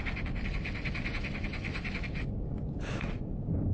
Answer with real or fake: real